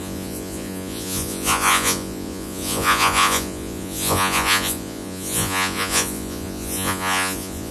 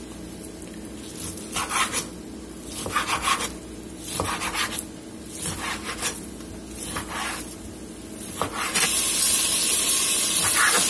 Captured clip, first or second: second